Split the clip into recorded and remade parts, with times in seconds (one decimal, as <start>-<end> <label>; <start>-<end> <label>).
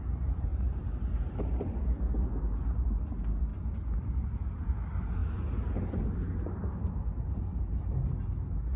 0.0-8.8 recorded